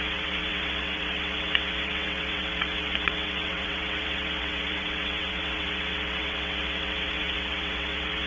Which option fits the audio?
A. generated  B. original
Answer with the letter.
A